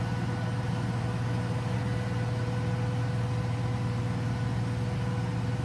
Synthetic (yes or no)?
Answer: no